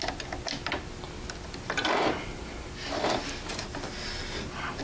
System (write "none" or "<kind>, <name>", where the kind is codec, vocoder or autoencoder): none